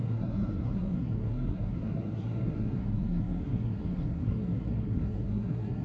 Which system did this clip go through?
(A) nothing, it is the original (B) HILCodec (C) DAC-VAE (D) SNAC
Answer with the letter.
D